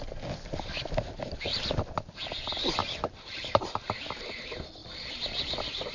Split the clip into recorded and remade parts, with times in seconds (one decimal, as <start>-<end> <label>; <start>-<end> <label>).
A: 0.0-2.8 recorded; 2.8-3.6 remade; 3.6-5.9 recorded